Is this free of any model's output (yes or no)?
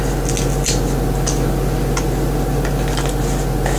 yes